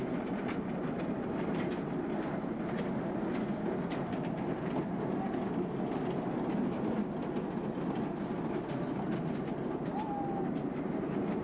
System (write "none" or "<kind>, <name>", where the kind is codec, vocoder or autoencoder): none